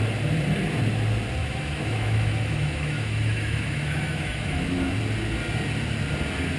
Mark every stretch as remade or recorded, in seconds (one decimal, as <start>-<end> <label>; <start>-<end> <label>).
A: 0.0-1.4 recorded; 1.4-5.0 remade; 5.0-6.6 recorded